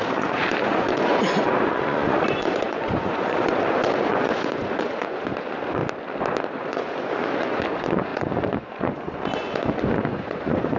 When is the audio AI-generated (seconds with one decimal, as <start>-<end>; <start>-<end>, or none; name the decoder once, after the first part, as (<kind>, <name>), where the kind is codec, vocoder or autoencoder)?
0.0-5.8 (vocoder, Vocos); 6.6-10.8

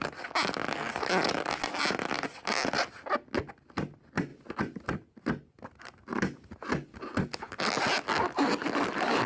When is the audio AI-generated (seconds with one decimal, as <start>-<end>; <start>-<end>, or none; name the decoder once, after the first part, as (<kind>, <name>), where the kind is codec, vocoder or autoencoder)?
none

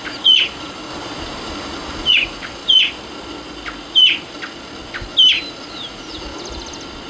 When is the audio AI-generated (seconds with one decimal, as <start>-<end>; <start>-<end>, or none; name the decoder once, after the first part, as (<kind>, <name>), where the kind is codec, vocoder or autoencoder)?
0.0-0.9 (vocoder, Vocos); 2.1-2.6; 5.7-6.3

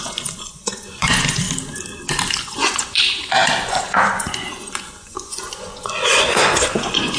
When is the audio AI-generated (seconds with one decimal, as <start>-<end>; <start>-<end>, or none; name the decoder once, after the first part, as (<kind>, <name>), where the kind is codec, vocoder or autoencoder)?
0.0-1.4 (vocoder, Vocos); 2.4-7.2

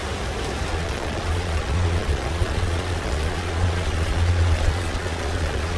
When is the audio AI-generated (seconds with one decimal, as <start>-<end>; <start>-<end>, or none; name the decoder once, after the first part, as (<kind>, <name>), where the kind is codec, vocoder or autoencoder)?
0.7-5.8 (vocoder, Vocos)

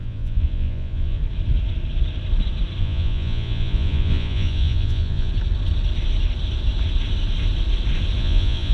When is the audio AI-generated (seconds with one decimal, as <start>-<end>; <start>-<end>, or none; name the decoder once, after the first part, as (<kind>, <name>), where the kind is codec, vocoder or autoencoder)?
0.0-1.2 (vocoder, Vocos); 2.8-5.3; 8.2-8.7

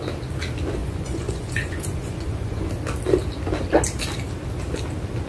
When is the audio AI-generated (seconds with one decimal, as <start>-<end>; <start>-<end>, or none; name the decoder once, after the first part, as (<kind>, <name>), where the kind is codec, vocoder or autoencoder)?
0.8-2.7 (vocoder, Vocos)

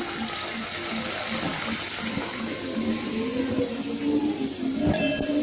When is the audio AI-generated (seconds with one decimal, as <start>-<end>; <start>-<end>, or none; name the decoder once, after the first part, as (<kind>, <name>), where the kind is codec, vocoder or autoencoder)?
none